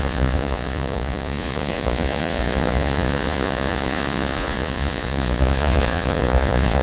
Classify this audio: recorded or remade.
remade